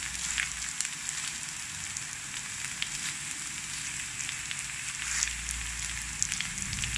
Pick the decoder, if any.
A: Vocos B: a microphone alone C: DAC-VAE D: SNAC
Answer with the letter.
B